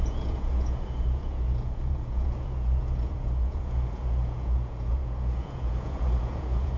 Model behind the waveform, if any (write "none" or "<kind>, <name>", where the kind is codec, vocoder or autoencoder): vocoder, Vocos